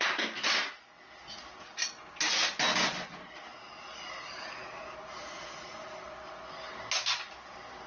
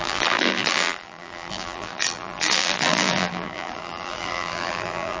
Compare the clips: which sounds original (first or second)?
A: first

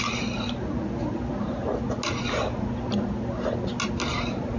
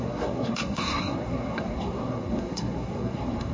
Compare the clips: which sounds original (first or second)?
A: first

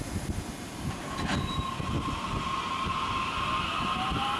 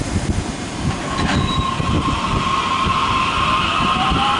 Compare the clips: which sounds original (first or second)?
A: first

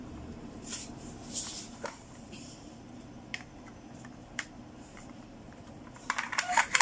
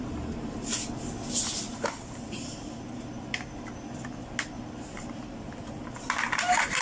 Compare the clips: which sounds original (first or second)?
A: second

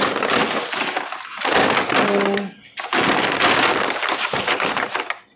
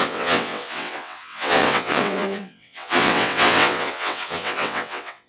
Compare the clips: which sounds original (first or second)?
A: first